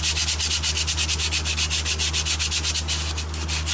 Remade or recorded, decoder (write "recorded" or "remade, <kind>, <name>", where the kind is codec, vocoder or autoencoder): recorded